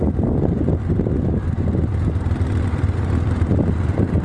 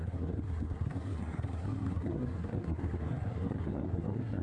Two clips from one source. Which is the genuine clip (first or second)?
first